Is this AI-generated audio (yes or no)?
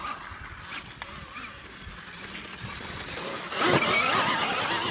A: no